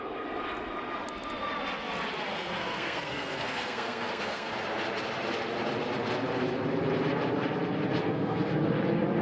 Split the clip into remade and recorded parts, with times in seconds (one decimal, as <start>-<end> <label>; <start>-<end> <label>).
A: 0.0-2.3 recorded; 2.3-4.5 remade; 4.5-8.0 recorded; 8.0-8.5 remade; 8.5-9.2 recorded